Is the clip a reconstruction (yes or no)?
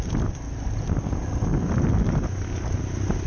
no